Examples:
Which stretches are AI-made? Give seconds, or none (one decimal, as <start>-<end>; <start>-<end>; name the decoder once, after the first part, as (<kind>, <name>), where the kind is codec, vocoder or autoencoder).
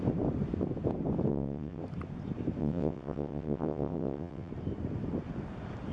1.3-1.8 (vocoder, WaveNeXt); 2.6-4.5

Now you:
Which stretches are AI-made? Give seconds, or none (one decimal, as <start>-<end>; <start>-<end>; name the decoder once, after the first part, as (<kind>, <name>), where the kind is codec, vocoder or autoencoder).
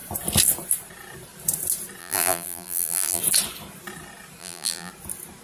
2.0-3.2 (vocoder, BigVGAN v2); 4.4-4.9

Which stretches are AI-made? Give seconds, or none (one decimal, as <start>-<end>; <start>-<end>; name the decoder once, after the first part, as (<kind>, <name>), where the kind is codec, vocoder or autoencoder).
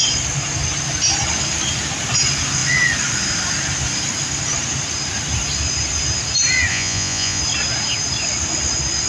6.7-7.4 (vocoder, Vocos)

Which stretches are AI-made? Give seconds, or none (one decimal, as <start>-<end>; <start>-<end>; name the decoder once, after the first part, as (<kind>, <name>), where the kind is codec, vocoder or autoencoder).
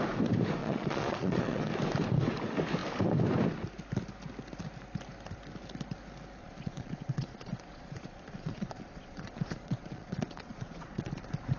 0.6-1.7 (vocoder, Vocos); 6.4-11.2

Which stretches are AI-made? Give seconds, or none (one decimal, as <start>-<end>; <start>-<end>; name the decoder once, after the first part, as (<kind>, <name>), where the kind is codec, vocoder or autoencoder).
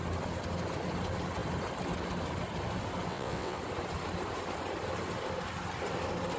3.1-3.6 (vocoder, WaveNeXt)